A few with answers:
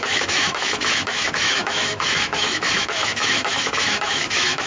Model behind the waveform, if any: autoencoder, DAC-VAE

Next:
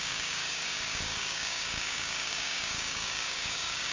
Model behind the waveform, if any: codec, DAC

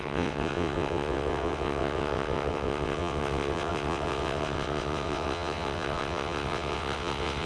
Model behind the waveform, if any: vocoder, WaveNeXt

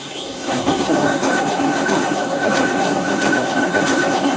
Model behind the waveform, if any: codec, SNAC